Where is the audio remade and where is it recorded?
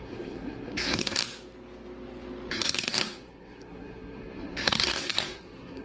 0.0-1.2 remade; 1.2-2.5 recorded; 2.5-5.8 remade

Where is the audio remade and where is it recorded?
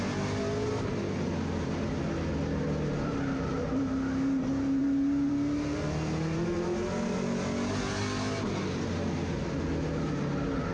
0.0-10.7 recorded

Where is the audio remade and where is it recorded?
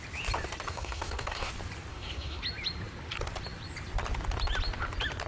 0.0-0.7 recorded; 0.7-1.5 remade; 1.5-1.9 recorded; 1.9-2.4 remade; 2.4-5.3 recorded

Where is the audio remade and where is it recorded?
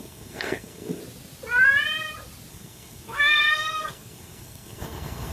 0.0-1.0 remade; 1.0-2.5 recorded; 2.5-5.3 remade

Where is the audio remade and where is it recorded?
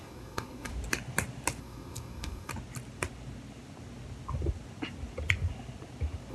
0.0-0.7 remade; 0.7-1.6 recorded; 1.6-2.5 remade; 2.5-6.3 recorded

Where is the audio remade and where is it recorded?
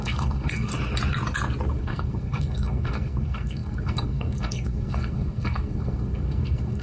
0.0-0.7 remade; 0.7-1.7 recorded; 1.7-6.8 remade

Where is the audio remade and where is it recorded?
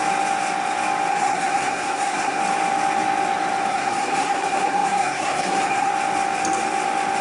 0.0-1.1 recorded; 1.1-2.4 remade; 2.4-3.7 recorded; 3.7-5.9 remade; 5.9-7.2 recorded